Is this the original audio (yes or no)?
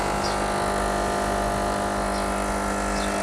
yes